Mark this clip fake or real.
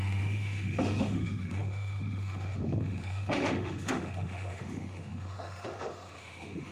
fake